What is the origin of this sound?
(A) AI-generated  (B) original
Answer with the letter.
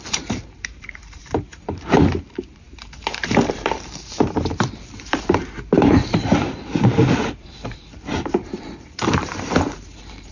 A